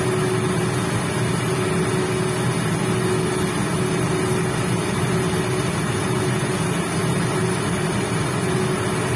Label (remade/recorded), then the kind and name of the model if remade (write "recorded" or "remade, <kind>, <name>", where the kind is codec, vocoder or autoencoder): recorded